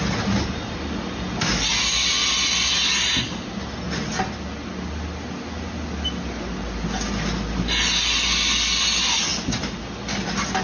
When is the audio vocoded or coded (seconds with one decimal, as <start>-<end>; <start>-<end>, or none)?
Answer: none